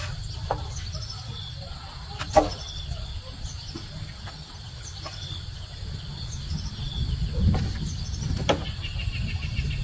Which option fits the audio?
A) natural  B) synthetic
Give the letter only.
A